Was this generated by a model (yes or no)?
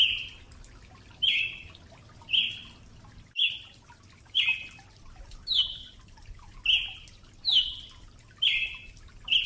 no